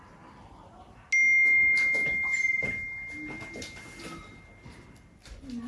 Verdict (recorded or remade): recorded